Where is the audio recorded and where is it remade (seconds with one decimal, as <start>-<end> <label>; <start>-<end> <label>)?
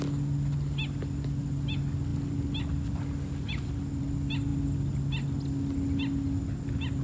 0.0-7.0 recorded